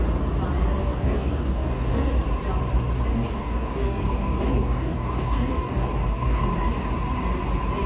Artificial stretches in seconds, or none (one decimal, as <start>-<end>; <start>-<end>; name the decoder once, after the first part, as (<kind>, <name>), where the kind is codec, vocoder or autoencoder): 0.8-2.1 (codec, DAC); 3.1-6.5